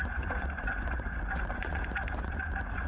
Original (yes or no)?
no